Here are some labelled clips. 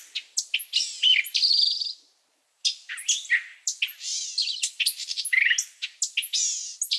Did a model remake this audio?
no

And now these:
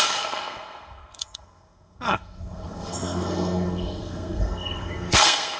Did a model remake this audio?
yes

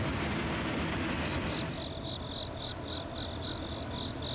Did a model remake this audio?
no